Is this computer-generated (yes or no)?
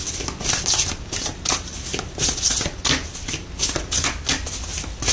no